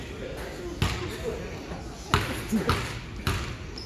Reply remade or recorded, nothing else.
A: recorded